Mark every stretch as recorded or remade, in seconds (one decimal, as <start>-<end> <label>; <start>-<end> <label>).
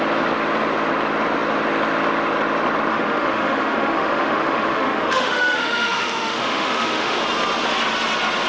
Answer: 0.0-2.9 recorded; 2.9-7.2 remade; 7.2-8.5 recorded